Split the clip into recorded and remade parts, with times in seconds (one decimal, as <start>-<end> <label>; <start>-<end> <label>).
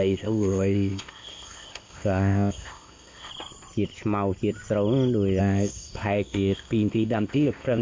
0.0-3.3 remade; 3.3-5.4 recorded; 5.4-7.8 remade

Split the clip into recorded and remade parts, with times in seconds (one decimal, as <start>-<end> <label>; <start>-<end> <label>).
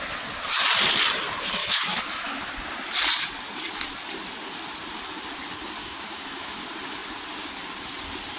0.0-1.6 recorded; 1.6-2.4 remade; 2.4-5.8 recorded; 5.8-6.6 remade; 6.6-8.4 recorded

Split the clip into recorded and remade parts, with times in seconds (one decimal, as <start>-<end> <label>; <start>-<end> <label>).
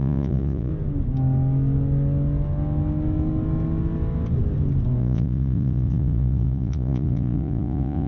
0.0-0.7 remade; 0.7-5.0 recorded; 5.0-8.1 remade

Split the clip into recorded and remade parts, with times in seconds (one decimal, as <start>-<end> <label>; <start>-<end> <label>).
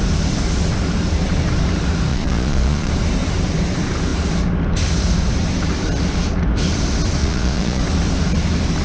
0.0-2.1 recorded; 2.1-2.9 remade; 2.9-7.2 recorded; 7.2-7.8 remade; 7.8-8.8 recorded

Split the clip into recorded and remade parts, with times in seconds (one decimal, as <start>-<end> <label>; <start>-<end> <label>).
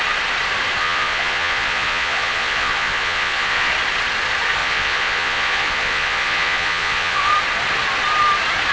0.0-0.8 recorded; 0.8-3.7 remade; 3.7-4.6 recorded; 4.6-7.3 remade; 7.3-8.7 recorded